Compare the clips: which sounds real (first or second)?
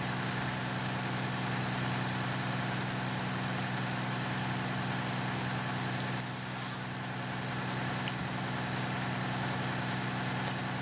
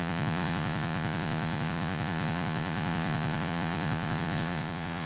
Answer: first